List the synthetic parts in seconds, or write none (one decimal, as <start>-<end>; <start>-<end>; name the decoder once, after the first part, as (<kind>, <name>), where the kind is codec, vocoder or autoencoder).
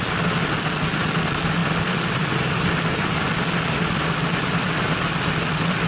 none